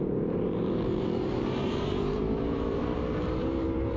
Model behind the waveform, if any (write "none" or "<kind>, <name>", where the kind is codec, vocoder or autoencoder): vocoder, BigVGAN v2